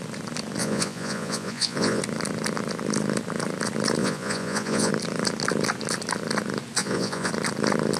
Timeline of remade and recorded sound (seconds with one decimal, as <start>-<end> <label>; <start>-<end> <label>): 0.0-0.6 recorded; 0.6-2.0 remade; 2.0-4.0 recorded; 4.0-4.9 remade; 4.9-6.8 recorded; 6.8-7.3 remade; 7.3-8.0 recorded

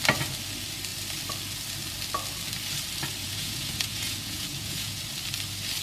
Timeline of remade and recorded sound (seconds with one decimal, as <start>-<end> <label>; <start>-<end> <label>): 0.0-3.2 recorded; 3.2-5.0 remade; 5.0-5.8 recorded